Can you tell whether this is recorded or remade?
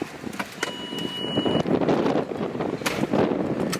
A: recorded